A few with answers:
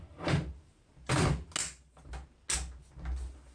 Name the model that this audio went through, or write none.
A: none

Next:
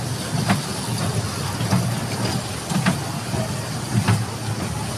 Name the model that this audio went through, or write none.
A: none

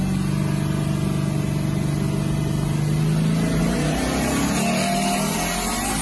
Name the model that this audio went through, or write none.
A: none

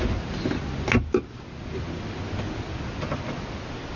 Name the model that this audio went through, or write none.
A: none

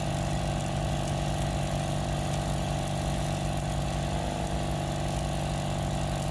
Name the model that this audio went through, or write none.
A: none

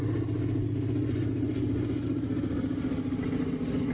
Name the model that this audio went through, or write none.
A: none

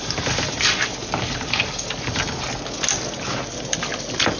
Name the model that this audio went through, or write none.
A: none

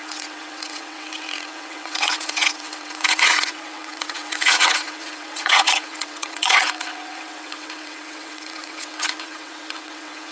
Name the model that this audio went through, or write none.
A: vocoder, WaveNeXt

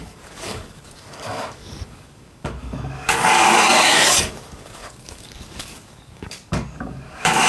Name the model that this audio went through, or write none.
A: codec, DAC